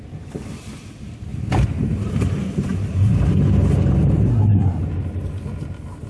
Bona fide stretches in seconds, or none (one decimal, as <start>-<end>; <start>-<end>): 0.0-4.3; 4.8-6.1